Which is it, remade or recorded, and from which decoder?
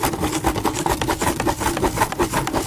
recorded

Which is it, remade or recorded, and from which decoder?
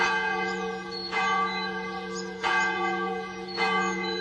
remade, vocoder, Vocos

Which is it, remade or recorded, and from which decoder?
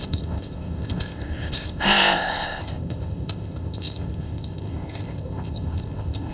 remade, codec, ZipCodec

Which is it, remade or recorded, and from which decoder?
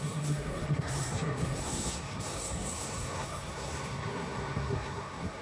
remade, codec, SNAC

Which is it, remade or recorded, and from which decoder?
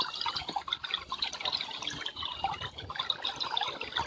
recorded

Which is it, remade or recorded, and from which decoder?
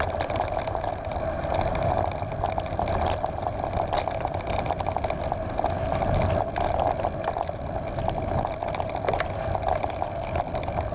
recorded